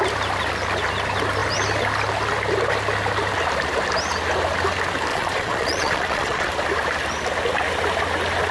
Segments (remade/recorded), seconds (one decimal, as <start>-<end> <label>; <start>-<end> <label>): 0.0-5.1 recorded; 5.1-6.5 remade; 6.5-8.5 recorded